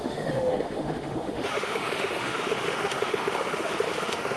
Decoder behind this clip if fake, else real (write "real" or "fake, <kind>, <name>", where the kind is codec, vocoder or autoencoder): fake, autoencoder, DAC-VAE